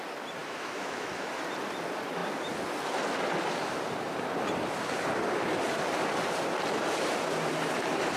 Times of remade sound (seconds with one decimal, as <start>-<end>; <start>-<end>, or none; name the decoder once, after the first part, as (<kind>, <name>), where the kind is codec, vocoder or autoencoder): 0.4-1.4 (autoencoder, DAC-VAE)